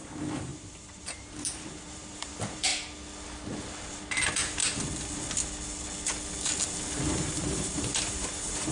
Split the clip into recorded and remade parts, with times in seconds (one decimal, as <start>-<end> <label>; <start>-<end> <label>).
0.0-2.7 remade; 2.7-3.9 recorded; 3.9-4.6 remade; 4.6-6.9 recorded; 6.9-8.7 remade